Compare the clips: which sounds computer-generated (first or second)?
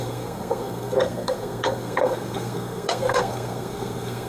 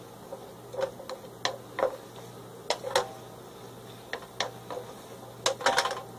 first